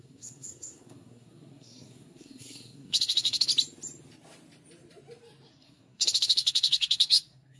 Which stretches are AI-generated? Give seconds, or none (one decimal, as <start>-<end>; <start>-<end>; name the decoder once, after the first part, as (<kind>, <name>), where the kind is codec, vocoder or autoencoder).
0.0-3.5 (codec, SNAC); 5.5-7.6